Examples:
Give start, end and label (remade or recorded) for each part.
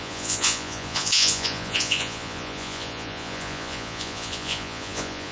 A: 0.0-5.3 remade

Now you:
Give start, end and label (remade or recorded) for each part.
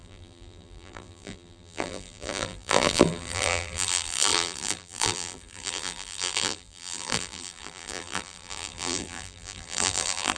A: 0.0-10.4 remade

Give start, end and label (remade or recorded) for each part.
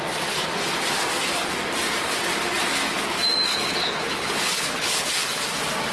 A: 0.0-3.5 recorded; 3.5-5.4 remade; 5.4-5.9 recorded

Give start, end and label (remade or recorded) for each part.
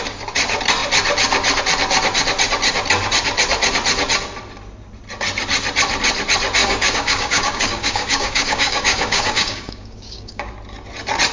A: 0.0-6.6 recorded; 6.6-10.5 remade; 10.5-11.3 recorded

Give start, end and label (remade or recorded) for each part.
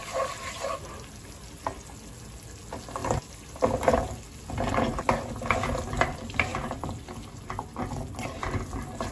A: 0.0-9.1 recorded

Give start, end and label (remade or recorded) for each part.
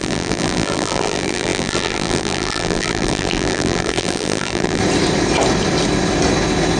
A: 0.0-4.8 remade; 4.8-6.8 recorded